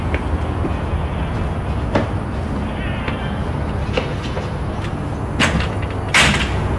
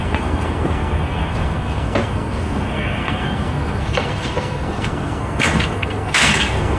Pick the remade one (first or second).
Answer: second